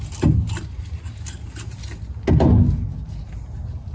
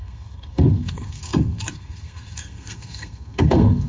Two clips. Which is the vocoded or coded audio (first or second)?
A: second